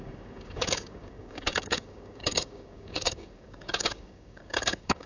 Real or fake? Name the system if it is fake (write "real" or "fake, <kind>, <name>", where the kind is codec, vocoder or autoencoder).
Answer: fake, codec, DAC